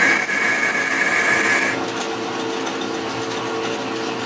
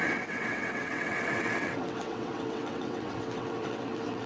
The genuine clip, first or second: first